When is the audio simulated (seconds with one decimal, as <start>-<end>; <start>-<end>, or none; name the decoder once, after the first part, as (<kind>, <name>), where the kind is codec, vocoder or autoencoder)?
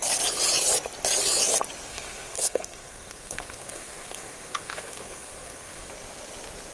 1.9-5.9 (codec, SNAC)